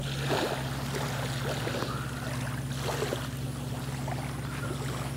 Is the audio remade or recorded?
recorded